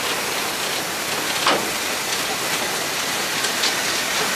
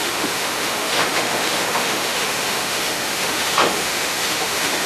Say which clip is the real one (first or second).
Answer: first